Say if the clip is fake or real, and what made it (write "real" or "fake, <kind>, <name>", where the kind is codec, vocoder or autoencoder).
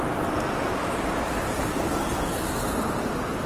real